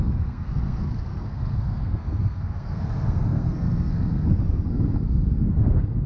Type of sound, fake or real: fake